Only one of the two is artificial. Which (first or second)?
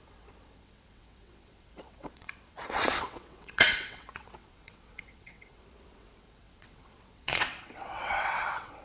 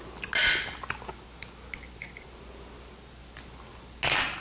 first